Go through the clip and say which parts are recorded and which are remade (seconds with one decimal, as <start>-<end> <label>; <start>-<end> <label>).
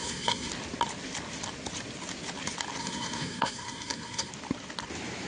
0.0-0.5 remade; 0.5-2.8 recorded; 2.8-4.3 remade; 4.3-5.3 recorded